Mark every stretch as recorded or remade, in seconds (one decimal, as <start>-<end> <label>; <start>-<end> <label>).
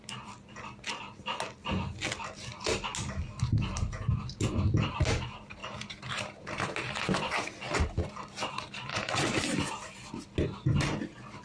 0.0-11.4 recorded